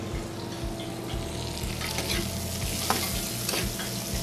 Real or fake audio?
real